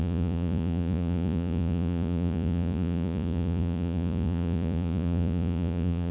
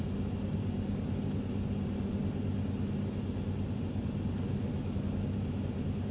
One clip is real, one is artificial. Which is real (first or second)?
second